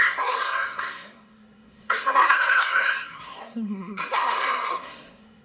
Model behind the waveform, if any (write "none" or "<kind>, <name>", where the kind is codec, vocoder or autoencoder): codec, SNAC